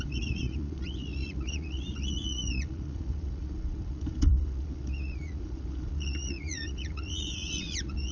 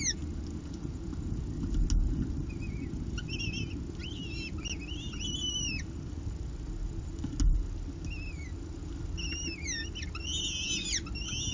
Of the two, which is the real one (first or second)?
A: second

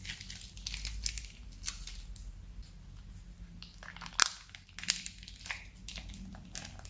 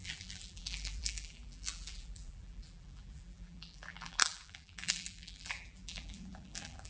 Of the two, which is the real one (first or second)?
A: first